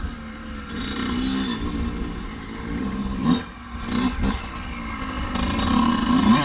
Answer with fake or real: real